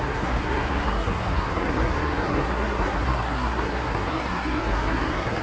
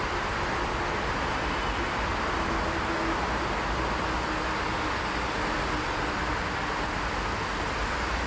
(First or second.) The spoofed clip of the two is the first